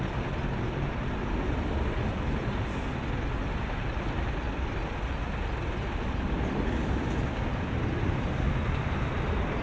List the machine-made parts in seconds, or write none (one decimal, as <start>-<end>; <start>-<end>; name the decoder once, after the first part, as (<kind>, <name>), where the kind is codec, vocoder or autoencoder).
6.8-8.4 (vocoder, BigVGAN v2)